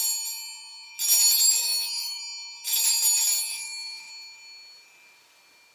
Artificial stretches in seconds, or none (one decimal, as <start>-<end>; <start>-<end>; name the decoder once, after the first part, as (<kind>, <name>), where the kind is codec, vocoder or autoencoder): 1.6-2.2 (autoencoder, DAC-VAE); 3.5-4.1